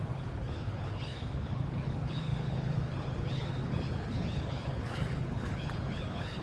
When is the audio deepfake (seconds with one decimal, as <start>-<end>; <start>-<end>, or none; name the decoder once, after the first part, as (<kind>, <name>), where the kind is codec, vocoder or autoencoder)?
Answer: 0.0-6.4 (codec, HILCodec)